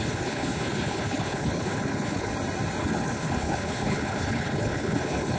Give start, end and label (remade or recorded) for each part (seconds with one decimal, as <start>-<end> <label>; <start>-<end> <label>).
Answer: 0.0-2.3 remade; 2.3-2.8 recorded; 2.8-5.4 remade